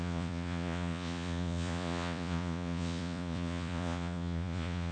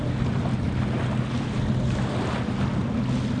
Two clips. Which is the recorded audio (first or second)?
second